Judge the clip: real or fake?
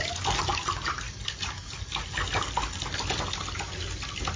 real